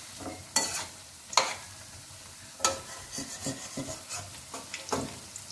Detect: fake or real real